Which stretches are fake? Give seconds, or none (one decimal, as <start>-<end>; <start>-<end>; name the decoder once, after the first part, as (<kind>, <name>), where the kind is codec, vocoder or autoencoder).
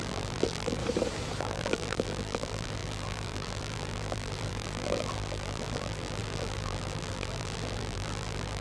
0.0-0.8 (vocoder, BigVGAN v2); 1.4-8.6